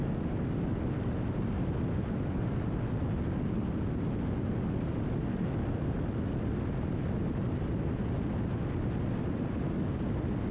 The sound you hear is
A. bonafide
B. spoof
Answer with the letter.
A